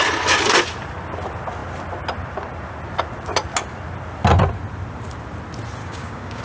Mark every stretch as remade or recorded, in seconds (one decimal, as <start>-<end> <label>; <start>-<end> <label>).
0.0-5.8 recorded; 5.8-6.4 remade